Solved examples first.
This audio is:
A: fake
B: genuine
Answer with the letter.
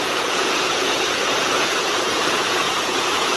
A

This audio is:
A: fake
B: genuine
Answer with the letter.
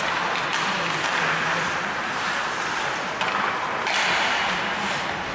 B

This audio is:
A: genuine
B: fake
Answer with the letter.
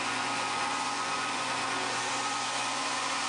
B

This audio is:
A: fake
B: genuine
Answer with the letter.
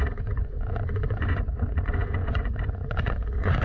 A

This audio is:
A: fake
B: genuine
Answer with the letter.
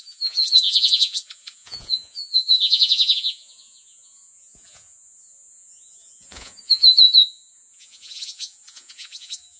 A